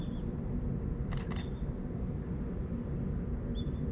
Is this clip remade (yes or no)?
no